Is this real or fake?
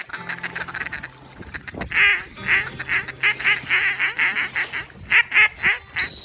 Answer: real